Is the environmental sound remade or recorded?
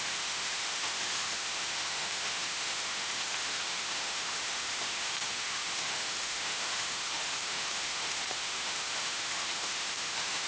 remade